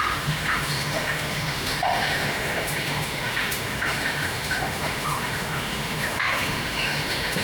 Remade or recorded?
remade